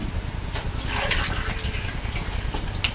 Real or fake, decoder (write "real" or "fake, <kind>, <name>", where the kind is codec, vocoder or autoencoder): real